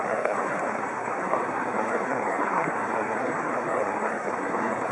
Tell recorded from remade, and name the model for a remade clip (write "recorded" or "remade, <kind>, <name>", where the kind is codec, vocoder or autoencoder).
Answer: remade, codec, SNAC